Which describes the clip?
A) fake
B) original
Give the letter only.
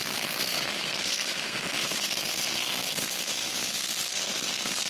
A